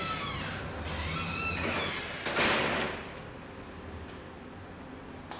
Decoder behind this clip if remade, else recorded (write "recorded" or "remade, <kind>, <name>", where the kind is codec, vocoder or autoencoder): recorded